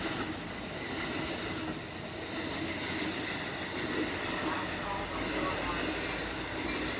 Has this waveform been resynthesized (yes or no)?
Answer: no